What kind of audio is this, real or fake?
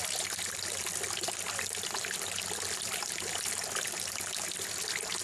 real